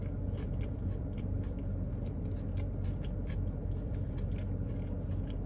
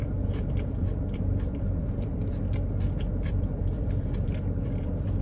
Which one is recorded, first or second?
first